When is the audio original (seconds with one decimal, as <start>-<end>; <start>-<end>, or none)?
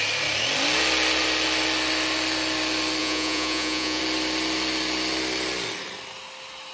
0.0-3.0; 4.0-6.7